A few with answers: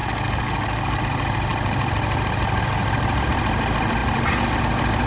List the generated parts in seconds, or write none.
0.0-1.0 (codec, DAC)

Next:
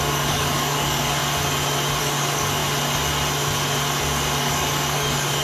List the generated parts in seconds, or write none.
0.0-1.2 (codec, DAC); 2.0-2.6; 4.4-5.4

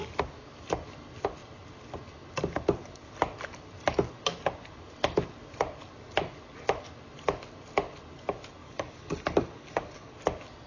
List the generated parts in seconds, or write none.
8.6-10.1 (codec, DAC)